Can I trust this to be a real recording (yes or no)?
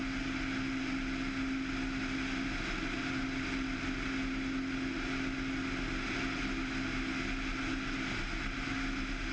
yes